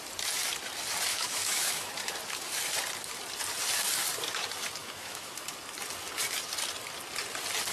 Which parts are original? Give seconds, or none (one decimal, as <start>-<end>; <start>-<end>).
0.0-1.1; 1.9-4.8; 5.3-7.7